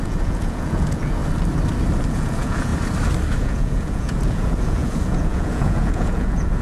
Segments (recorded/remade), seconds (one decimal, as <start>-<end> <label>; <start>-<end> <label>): 0.0-1.2 remade; 1.2-2.1 recorded; 2.1-2.7 remade; 2.7-3.4 recorded; 3.4-6.6 remade